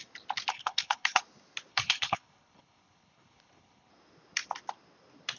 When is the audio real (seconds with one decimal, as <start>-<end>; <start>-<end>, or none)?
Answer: 0.0-0.5; 1.2-1.7; 3.9-5.4